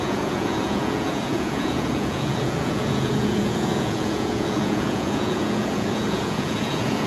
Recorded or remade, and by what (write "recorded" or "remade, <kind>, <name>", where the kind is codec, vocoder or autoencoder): remade, vocoder, Vocos